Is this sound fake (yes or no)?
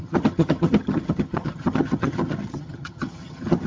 yes